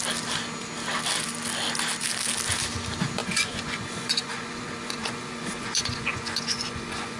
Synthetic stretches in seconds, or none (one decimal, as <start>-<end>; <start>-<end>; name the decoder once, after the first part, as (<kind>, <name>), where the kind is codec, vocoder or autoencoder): 3.2-7.2 (vocoder, Vocos)